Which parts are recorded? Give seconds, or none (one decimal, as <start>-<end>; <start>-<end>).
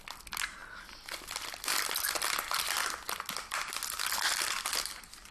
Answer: 0.0-5.3